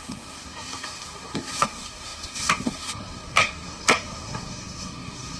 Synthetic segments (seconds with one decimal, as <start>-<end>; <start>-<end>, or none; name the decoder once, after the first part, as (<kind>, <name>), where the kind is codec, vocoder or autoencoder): 0.0-5.4 (codec, SNAC)